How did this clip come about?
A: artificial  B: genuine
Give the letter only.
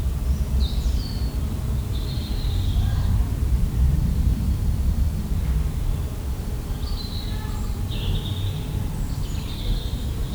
A